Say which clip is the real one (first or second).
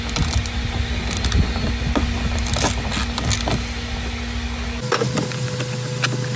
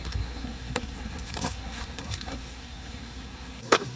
first